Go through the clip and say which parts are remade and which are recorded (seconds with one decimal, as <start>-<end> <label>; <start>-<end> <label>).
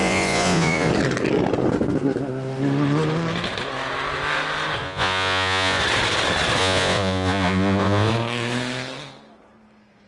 0.0-0.9 remade; 0.9-4.8 recorded; 4.8-5.8 remade; 5.8-6.6 recorded; 6.6-8.1 remade; 8.1-10.1 recorded